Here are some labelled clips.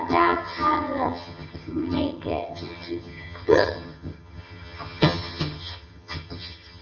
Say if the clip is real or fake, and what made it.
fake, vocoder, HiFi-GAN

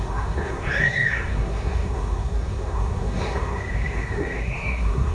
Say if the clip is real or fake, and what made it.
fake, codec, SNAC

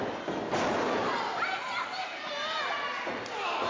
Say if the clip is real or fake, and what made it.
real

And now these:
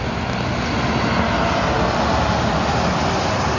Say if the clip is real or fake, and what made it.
real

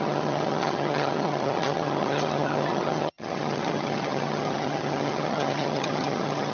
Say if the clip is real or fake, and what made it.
fake, vocoder, HiFi-GAN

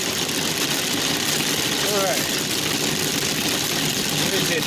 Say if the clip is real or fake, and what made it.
real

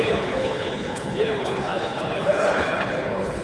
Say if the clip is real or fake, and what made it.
fake, codec, HILCodec